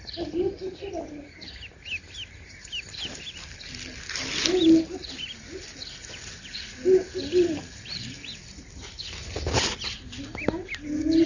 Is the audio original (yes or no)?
yes